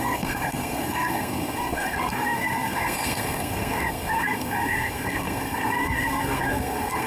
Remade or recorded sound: remade